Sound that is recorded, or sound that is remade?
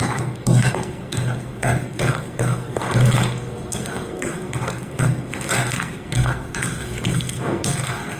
remade